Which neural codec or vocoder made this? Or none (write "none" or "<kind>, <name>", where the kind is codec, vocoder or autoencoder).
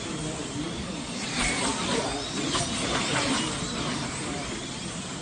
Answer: vocoder, BigVGAN v2